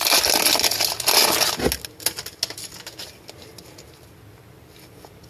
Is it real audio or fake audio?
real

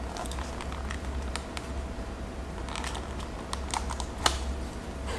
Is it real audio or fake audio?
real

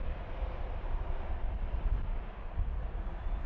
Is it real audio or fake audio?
fake